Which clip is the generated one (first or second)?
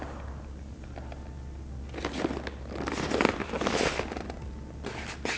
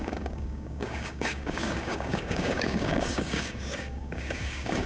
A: second